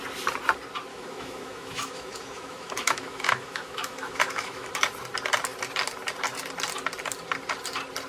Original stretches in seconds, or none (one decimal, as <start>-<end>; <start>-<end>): 0.0-0.9; 4.7-8.1